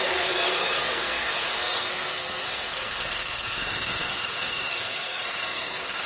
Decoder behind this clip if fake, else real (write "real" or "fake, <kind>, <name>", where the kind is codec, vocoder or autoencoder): fake, codec, SNAC